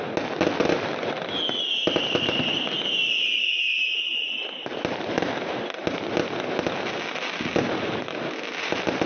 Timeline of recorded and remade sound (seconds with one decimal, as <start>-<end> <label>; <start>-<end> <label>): 0.0-9.1 recorded